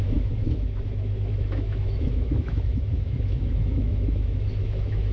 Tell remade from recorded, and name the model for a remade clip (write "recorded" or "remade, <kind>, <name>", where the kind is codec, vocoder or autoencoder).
remade, autoencoder, DAC-VAE